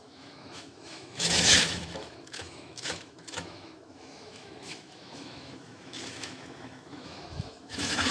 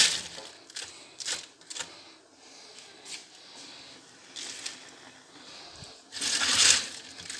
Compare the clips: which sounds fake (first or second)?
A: first